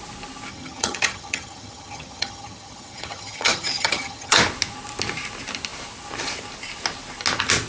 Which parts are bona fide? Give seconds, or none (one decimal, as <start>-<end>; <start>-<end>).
0.0-0.5; 4.4-7.7